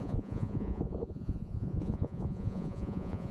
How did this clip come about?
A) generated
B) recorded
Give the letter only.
A